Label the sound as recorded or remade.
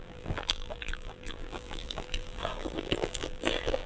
remade